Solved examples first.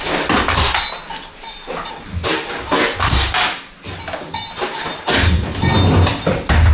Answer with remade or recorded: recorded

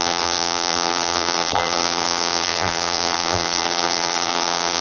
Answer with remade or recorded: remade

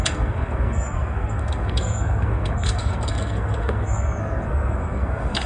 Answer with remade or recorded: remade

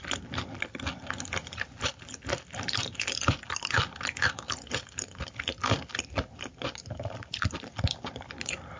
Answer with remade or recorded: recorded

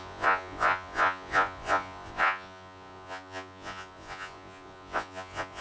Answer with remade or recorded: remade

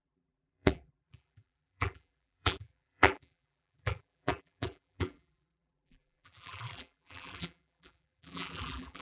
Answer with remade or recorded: remade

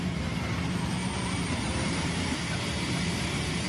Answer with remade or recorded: remade